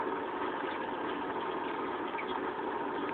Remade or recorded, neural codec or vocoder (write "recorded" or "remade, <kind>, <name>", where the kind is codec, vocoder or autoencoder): recorded